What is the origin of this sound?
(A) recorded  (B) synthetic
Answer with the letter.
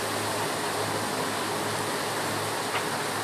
A